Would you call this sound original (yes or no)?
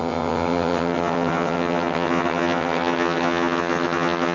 no